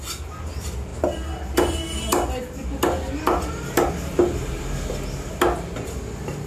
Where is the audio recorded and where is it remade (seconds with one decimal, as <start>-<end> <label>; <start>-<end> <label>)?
0.0-6.5 recorded